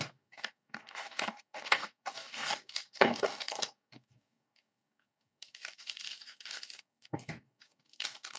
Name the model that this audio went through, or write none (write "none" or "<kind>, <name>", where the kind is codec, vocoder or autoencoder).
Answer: codec, DAC